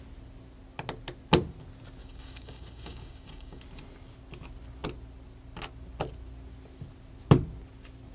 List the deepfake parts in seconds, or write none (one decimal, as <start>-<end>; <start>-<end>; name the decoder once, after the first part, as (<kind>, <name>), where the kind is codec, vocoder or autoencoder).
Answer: 2.0-3.6 (codec, DAC)